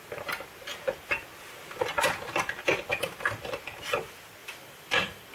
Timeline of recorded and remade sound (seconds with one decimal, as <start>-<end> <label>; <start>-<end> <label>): 0.0-4.4 recorded; 4.4-5.3 remade